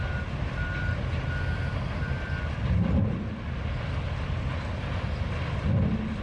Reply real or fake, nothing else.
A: real